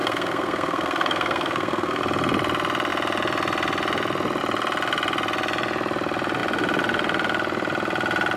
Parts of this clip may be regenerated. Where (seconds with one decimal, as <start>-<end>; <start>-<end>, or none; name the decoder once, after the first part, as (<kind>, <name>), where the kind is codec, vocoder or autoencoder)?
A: 0.0-2.0 (codec, SNAC)